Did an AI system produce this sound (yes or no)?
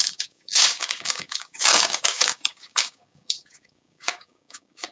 yes